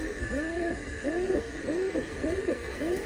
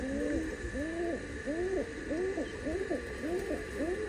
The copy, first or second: first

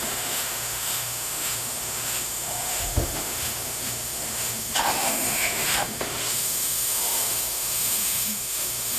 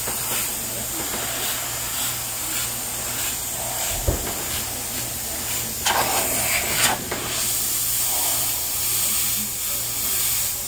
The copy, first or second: first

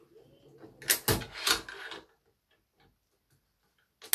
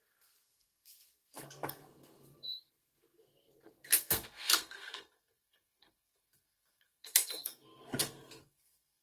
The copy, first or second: second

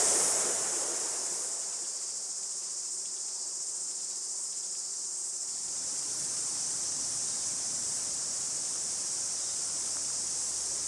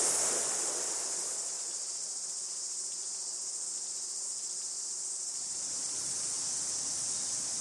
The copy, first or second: first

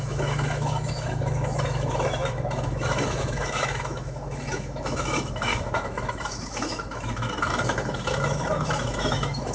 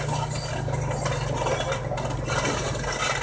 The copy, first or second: first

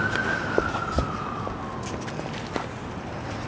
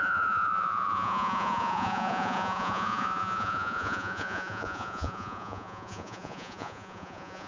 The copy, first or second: second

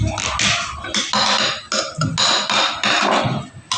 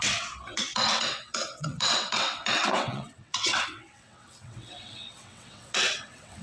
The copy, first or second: second